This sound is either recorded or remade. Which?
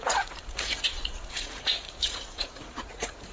remade